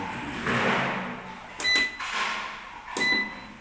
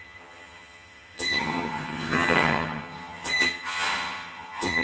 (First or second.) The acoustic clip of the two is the first